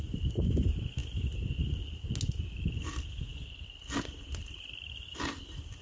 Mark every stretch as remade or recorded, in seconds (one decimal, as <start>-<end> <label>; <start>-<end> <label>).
0.0-5.8 recorded